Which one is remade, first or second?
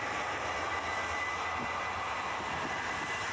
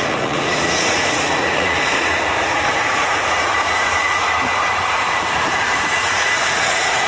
second